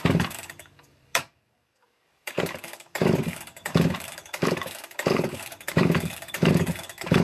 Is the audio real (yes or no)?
no